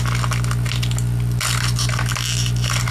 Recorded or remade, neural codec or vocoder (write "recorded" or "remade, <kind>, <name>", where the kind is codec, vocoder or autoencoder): recorded